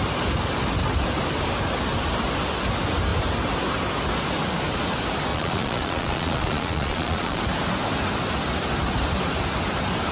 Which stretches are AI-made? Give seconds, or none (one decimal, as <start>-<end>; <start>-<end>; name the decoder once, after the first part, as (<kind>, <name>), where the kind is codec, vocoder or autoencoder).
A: 5.3-7.4 (vocoder, Vocos)